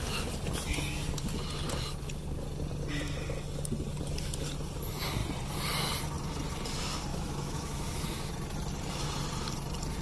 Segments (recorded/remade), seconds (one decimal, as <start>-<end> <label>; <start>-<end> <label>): 0.0-7.1 recorded; 7.1-8.3 remade; 8.3-10.0 recorded